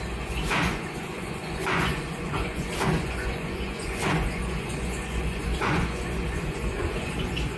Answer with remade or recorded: remade